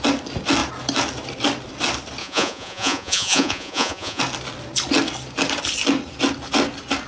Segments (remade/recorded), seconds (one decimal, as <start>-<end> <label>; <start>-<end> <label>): 0.0-2.2 recorded; 2.2-4.2 remade; 4.2-7.1 recorded